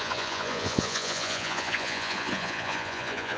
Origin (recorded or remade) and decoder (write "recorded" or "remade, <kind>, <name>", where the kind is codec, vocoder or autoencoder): remade, vocoder, Vocos